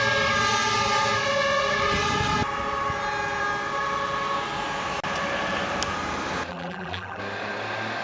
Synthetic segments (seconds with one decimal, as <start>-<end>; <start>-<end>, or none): 6.5-7.2

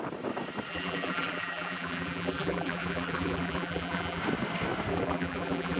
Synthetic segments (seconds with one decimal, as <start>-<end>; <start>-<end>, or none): 0.7-4.2; 4.9-5.8

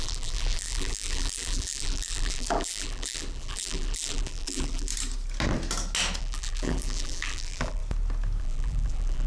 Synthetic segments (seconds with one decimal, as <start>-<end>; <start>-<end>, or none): 0.0-4.9; 6.2-7.8; 8.4-9.3

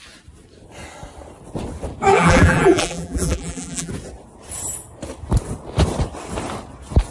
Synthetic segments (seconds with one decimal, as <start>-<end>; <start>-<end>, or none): 2.1-3.9

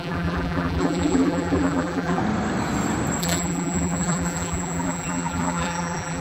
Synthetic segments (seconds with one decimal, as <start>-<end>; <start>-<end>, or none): 0.0-2.2; 3.2-6.2

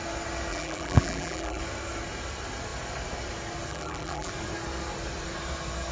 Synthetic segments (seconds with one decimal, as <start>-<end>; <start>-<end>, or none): 0.5-1.6; 3.7-4.3

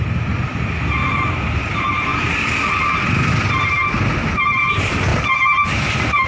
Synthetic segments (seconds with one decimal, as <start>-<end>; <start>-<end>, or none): 0.0-0.5; 1.7-2.1; 4.6-5.1

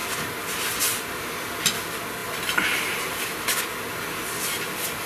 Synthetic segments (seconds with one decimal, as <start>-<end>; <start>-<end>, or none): 2.2-3.6